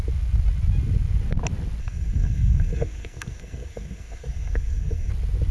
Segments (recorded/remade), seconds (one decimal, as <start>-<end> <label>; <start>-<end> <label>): 0.0-1.8 recorded; 1.8-5.1 remade; 5.1-5.5 recorded